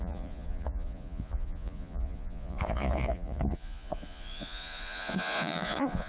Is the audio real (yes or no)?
no